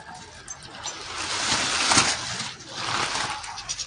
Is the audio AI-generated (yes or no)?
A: no